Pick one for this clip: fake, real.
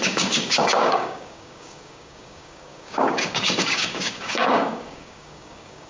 fake